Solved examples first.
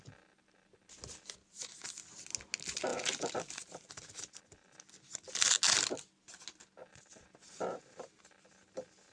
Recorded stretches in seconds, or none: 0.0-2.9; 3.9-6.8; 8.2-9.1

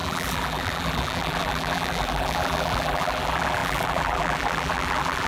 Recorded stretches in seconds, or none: none